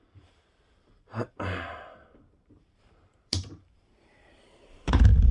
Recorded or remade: remade